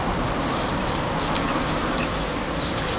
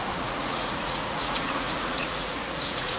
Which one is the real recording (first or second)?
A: first